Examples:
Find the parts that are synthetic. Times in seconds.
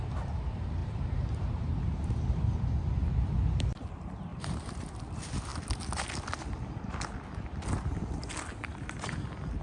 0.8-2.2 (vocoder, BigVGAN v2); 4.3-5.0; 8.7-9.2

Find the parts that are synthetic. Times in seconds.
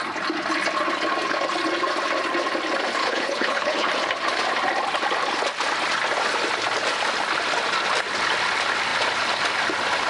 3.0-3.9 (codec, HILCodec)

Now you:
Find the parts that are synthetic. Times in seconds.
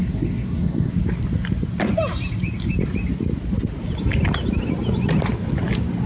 0.0-0.9 (codec, SNAC)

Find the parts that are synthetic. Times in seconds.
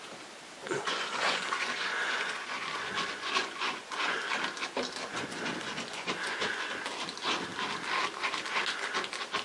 0.6-4.2 (vocoder, Vocos); 5.1-6.7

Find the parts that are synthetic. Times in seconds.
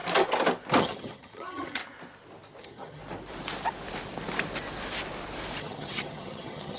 0.8-1.8 (vocoder, HiFi-GAN); 2.6-3.0; 5.6-6.8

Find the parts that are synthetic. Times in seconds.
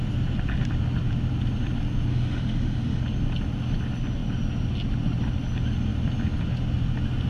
2.1-3.0 (autoencoder, DAC-VAE)